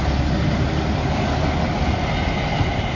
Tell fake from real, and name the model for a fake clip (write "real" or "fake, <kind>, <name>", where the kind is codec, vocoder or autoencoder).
real